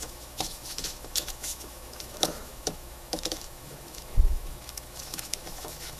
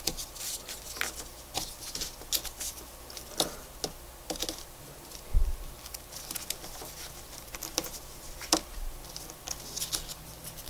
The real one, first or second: second